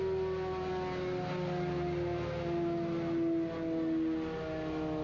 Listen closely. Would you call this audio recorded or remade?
recorded